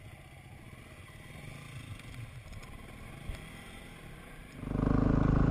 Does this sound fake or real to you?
real